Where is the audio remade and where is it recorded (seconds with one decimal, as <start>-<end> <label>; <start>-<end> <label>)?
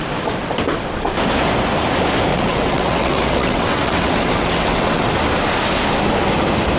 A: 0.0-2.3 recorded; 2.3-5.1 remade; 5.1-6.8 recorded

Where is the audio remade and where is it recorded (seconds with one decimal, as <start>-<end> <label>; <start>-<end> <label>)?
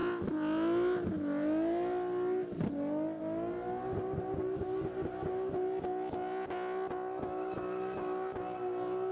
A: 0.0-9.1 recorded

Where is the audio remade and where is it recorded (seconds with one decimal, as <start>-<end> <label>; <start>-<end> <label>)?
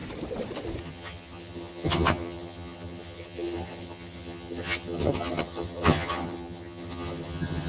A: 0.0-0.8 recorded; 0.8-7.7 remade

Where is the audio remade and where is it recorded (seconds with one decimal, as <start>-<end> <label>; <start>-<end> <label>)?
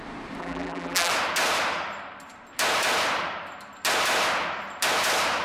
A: 0.0-0.4 recorded; 0.4-1.1 remade; 1.1-5.4 recorded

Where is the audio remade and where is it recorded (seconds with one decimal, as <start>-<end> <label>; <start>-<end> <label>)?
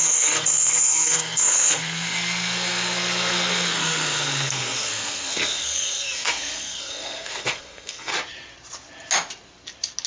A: 0.0-8.1 remade; 8.1-10.1 recorded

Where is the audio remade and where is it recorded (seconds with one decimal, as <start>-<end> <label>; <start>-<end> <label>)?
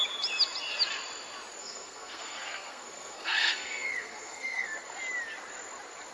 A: 0.0-1.6 recorded; 1.6-4.8 remade; 4.8-6.1 recorded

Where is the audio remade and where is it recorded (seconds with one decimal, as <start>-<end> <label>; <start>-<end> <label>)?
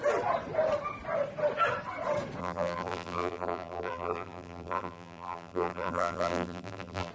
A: 0.0-2.4 recorded; 2.4-7.1 remade